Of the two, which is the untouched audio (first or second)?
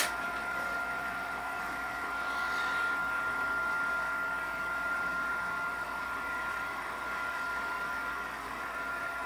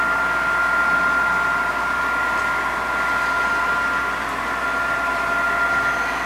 second